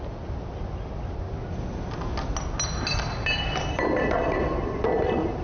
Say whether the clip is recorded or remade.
recorded